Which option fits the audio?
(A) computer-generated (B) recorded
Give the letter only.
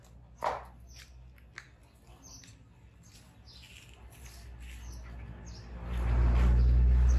B